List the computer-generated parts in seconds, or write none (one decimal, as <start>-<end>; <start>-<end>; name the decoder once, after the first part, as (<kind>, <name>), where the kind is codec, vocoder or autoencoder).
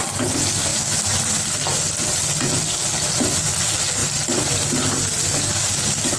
none